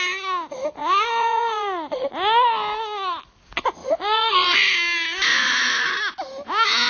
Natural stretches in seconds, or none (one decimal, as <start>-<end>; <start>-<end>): 0.0-0.8; 2.1-3.8; 4.7-5.3; 6.0-6.9